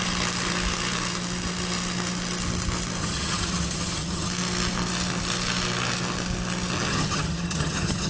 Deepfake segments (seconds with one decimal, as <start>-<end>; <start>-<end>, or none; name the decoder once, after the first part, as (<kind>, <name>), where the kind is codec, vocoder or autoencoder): 3.0-4.3 (vocoder, HiFi-GAN); 6.9-8.1